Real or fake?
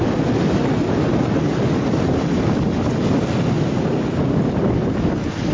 real